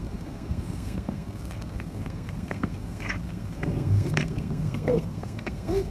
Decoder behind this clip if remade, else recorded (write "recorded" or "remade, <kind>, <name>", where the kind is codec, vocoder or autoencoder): remade, codec, SNAC